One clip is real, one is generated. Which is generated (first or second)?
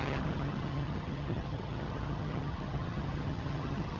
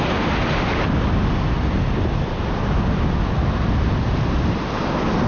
first